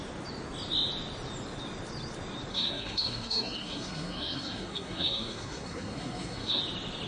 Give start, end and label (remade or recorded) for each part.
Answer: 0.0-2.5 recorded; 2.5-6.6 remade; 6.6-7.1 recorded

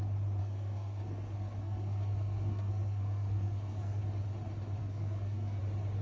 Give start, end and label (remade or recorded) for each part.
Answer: 0.0-0.4 recorded; 0.4-4.0 remade; 4.0-4.8 recorded; 4.8-5.6 remade; 5.6-6.0 recorded

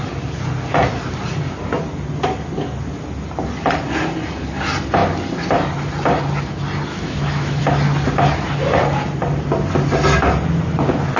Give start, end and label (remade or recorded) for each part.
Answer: 0.0-6.9 recorded; 6.9-7.6 remade; 7.6-11.2 recorded

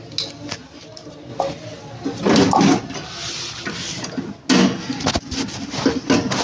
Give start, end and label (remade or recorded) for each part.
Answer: 0.0-6.4 recorded

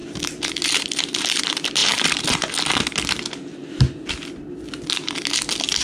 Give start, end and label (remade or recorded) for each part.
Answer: 0.0-1.4 remade; 1.4-5.8 recorded

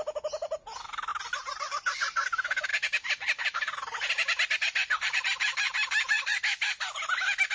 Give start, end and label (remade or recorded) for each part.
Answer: 0.0-1.1 recorded; 1.1-1.7 remade; 1.7-2.7 recorded; 2.7-4.1 remade; 4.1-4.8 recorded; 4.8-6.4 remade; 6.4-7.5 recorded